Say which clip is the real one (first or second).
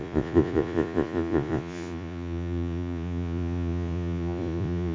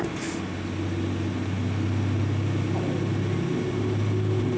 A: second